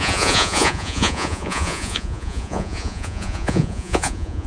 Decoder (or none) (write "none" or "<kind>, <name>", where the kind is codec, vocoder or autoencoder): vocoder, Vocos